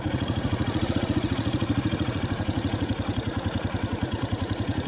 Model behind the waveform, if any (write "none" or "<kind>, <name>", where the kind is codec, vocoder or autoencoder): vocoder, Vocos